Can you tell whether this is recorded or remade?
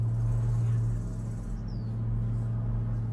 recorded